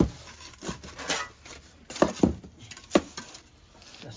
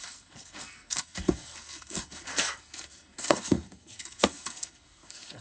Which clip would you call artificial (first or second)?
second